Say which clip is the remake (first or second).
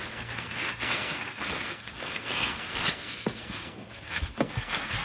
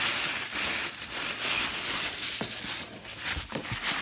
first